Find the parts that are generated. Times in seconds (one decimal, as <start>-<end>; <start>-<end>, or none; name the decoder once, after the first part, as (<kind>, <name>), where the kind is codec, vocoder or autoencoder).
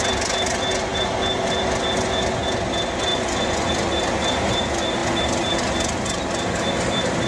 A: 3.1-3.7 (vocoder, Vocos)